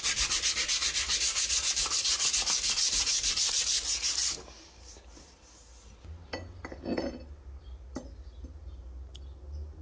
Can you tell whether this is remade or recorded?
recorded